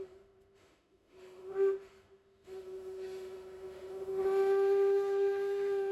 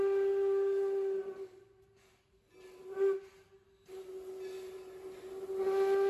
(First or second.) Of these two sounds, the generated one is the first